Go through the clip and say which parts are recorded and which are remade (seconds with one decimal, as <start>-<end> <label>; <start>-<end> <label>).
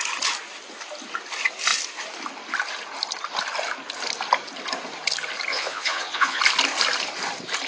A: 0.0-5.5 recorded; 5.5-6.4 remade; 6.4-7.7 recorded